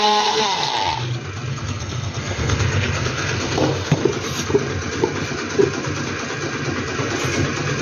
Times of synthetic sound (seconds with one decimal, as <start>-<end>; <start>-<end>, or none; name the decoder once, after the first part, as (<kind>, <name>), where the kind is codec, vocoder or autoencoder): 0.0-0.7 (codec, SNAC); 1.5-4.0